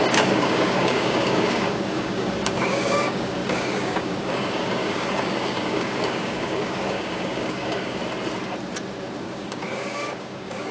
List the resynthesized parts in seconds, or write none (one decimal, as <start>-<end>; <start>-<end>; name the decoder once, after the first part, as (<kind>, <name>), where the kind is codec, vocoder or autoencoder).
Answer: 0.0-8.0 (codec, DAC); 9.2-10.7